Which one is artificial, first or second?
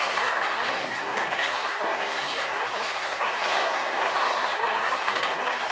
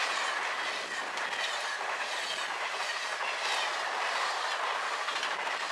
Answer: first